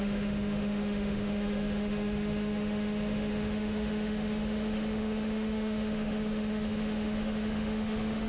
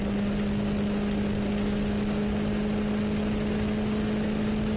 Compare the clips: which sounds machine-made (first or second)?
first